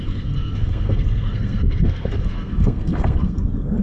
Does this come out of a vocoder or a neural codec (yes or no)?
yes